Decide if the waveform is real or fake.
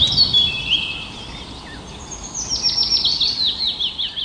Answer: real